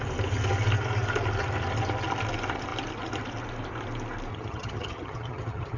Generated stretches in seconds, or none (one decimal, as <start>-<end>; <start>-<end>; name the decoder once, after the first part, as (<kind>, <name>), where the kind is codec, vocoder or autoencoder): 4.3-5.8 (vocoder, HiFi-GAN)

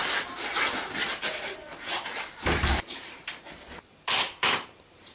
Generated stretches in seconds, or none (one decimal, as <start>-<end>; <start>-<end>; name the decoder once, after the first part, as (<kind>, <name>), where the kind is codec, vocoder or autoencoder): 2.6-3.4 (vocoder, BigVGAN v2)